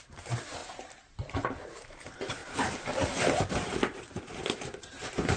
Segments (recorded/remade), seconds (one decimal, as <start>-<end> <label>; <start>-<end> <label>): 0.0-5.4 remade